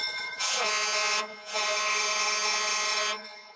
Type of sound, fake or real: fake